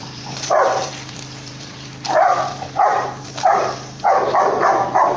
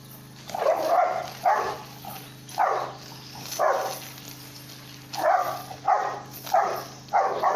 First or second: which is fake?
first